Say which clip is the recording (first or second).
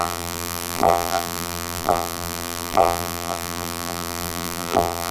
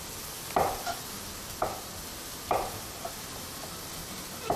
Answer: second